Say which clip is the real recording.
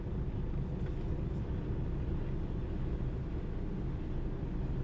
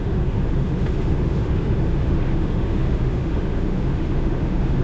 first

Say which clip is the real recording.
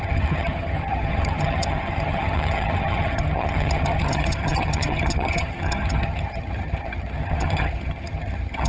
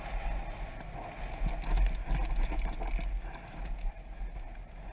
second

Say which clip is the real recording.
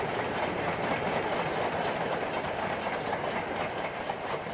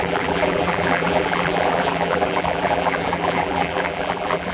first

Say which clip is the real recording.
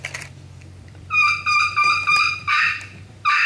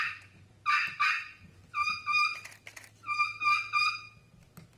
second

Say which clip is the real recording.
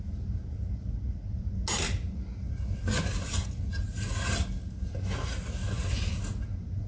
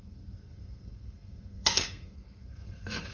first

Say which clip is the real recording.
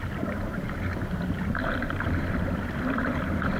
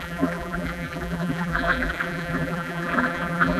first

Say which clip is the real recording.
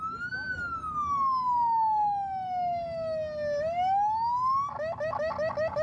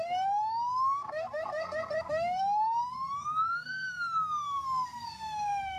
first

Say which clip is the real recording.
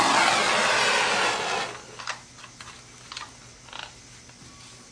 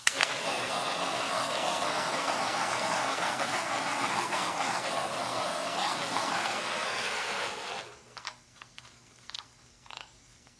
first